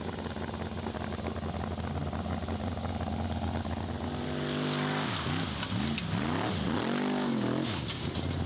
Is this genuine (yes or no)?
yes